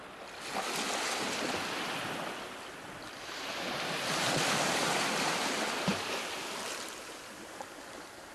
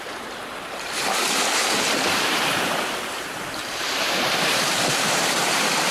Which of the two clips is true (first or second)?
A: first